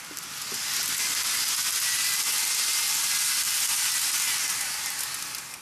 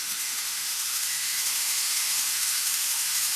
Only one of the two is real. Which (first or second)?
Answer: first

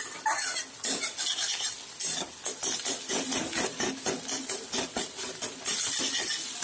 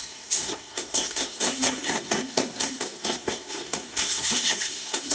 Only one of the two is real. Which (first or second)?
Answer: first